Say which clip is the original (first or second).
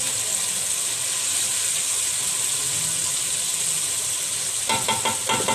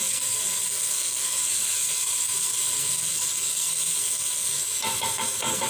first